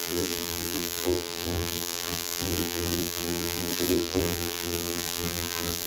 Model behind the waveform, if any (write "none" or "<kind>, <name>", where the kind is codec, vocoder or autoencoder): vocoder, BigVGAN v2